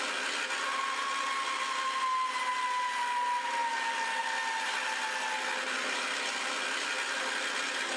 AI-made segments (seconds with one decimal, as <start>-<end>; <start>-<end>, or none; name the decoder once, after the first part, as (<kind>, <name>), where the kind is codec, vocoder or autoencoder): none

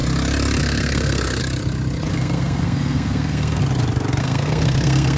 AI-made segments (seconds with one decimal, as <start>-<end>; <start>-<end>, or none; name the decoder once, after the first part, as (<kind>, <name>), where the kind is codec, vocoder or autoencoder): 0.6-1.4 (codec, SNAC); 2.1-3.6; 4.2-5.2

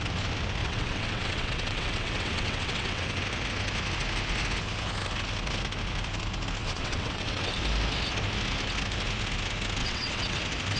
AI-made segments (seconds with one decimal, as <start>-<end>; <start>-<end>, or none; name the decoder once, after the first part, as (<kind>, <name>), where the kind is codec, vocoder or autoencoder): 0.6-3.2 (vocoder, WaveNeXt); 6.6-7.5; 9.8-10.4

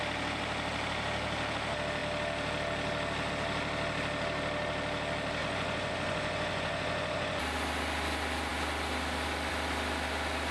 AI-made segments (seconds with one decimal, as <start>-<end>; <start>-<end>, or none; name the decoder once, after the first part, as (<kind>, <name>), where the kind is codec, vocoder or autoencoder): 5.4-7.4 (vocoder, Vocos)

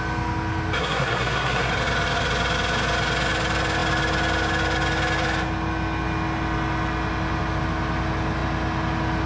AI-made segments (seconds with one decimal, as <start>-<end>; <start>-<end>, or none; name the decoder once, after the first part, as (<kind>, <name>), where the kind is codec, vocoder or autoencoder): 0.8-1.7 (codec, SNAC)

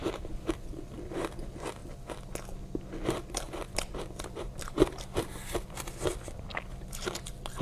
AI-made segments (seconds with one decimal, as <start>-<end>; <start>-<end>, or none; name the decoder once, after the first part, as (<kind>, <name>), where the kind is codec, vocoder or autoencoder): 0.0-1.8 (vocoder, BigVGAN v2); 4.0-6.5

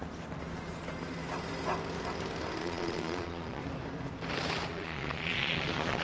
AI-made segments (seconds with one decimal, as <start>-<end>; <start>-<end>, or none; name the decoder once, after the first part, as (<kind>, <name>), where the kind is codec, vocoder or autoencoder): 2.6-3.6 (vocoder, Vocos); 4.7-6.0

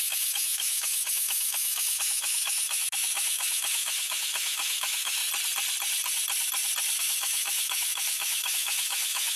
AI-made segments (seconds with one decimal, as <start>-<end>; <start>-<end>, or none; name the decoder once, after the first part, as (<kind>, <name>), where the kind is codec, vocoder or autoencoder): 0.0-5.2 (autoencoder, DAC-VAE); 7.0-9.4